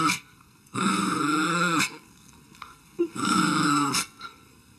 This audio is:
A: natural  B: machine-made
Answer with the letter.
B